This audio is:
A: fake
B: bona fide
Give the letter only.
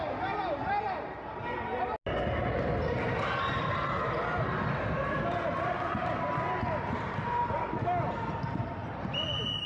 B